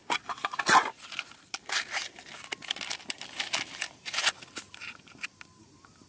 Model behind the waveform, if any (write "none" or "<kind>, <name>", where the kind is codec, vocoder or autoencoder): none